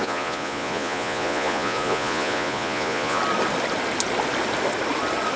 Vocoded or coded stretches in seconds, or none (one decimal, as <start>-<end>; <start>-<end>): 0.0-3.2